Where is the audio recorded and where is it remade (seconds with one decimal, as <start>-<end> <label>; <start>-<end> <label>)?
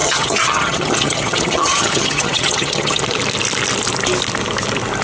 0.0-3.0 remade; 3.0-5.0 recorded